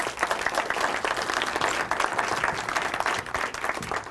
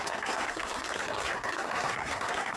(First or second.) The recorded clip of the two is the first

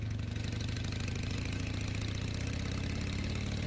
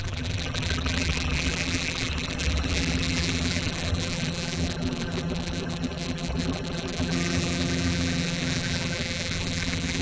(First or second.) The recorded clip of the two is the first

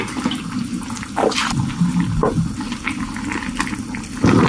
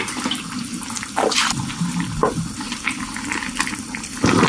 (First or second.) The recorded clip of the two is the first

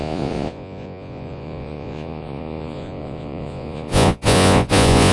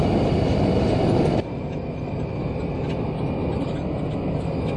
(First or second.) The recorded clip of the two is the second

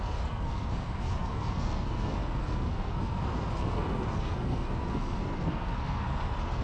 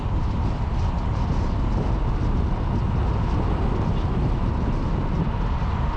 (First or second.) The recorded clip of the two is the second